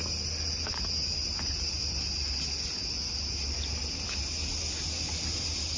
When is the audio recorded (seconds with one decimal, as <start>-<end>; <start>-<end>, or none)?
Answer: 0.0-5.8